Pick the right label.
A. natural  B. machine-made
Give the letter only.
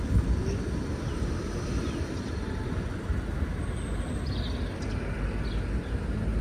A